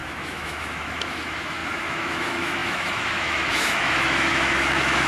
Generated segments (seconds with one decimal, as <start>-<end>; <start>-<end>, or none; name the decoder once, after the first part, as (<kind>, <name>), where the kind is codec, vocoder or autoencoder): 0.0-5.1 (autoencoder, DAC-VAE)